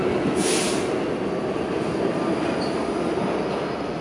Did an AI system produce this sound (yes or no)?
no